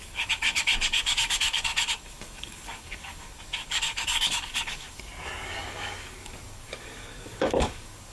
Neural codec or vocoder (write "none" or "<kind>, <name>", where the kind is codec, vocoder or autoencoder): codec, DAC